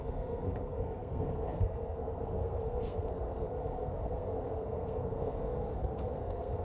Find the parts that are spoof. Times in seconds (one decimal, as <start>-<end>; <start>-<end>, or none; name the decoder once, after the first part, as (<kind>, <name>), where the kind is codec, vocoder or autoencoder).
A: 0.0-6.6 (codec, SNAC)